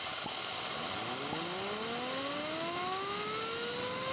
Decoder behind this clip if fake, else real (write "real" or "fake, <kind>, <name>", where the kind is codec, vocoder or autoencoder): real